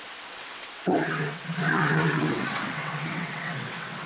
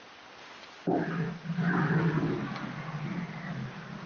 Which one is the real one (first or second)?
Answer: second